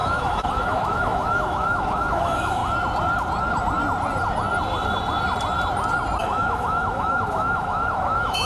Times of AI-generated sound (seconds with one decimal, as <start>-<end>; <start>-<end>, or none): 0.0-2.6; 6.2-8.5